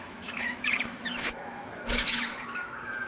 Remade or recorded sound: remade